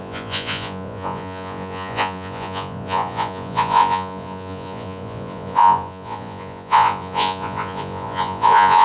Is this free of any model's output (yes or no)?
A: no